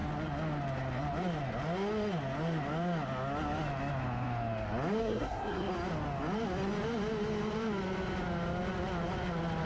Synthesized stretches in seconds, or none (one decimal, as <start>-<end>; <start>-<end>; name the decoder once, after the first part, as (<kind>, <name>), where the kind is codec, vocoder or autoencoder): 5.0-5.7 (codec, SNAC)